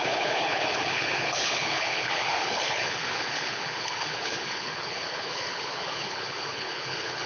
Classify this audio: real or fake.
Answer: fake